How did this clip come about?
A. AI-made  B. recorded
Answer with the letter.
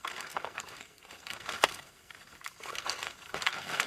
A